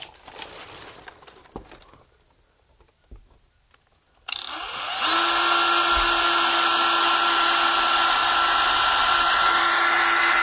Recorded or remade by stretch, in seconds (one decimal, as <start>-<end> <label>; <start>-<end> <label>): 0.0-10.4 recorded